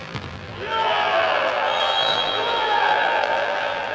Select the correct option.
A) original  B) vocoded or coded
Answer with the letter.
B